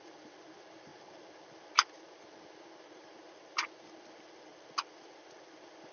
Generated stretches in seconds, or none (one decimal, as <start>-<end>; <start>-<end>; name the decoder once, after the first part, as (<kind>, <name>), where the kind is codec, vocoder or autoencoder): none